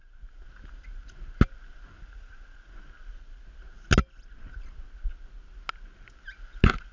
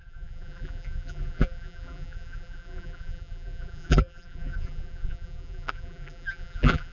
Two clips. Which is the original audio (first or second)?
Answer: first